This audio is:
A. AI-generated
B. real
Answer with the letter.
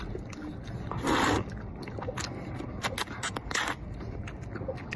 B